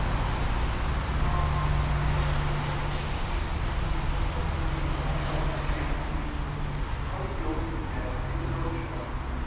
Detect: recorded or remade recorded